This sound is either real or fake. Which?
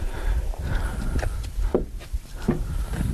fake